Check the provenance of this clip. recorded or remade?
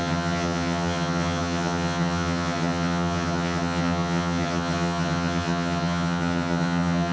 remade